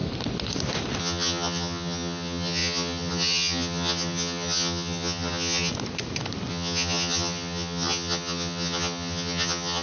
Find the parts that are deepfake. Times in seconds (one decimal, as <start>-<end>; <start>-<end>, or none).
1.0-5.7; 6.5-9.8